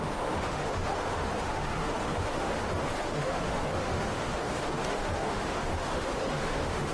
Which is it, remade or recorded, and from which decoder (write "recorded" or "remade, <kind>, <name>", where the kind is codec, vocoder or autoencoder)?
remade, autoencoder, DAC-VAE